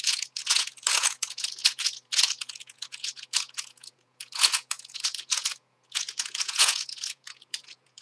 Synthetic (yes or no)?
yes